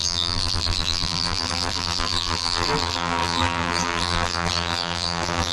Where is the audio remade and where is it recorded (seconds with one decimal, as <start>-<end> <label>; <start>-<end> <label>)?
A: 0.0-5.5 remade

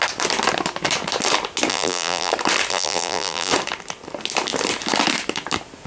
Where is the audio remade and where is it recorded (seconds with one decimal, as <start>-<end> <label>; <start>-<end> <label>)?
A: 0.0-1.7 recorded; 1.7-2.3 remade; 2.3-2.7 recorded; 2.7-3.5 remade; 3.5-5.9 recorded

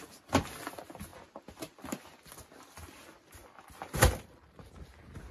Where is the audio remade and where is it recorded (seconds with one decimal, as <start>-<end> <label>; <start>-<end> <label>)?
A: 0.0-5.3 recorded

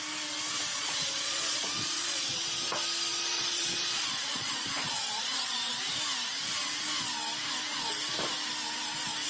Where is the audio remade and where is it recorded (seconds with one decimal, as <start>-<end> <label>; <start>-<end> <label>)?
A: 0.0-0.7 recorded; 0.7-2.3 remade; 2.3-3.1 recorded; 3.1-5.7 remade; 5.7-9.3 recorded

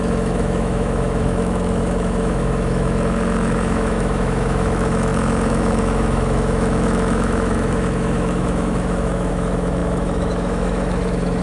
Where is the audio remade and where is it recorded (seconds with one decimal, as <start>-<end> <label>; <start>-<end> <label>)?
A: 0.0-11.4 remade

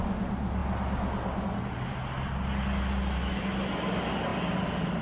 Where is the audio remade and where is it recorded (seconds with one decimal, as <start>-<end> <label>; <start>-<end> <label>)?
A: 0.0-5.0 recorded

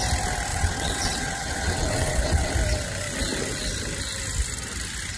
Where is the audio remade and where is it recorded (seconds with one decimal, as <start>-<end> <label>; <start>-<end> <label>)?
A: 0.0-0.5 recorded; 0.5-2.5 remade; 2.5-5.2 recorded

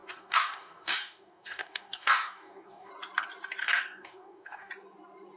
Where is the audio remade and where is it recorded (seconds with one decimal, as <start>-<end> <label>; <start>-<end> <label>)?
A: 0.0-2.9 remade; 2.9-3.6 recorded; 3.6-4.7 remade; 4.7-5.4 recorded